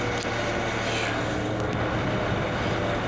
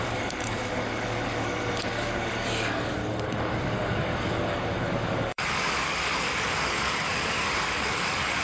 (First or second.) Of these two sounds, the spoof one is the second